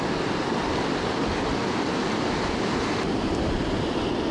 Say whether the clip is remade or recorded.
recorded